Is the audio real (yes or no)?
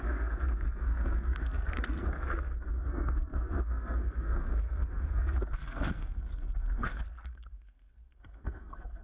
no